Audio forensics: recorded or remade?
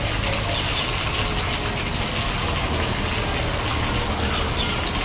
recorded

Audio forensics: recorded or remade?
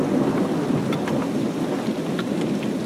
recorded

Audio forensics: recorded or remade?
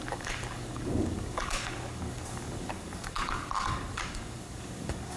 remade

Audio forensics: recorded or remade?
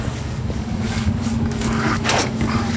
remade